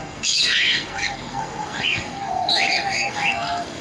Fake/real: fake